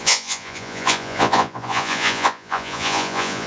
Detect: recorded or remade remade